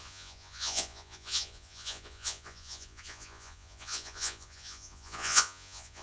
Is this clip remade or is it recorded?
remade